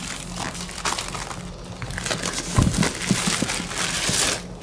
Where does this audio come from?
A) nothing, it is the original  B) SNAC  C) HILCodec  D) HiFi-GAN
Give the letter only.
A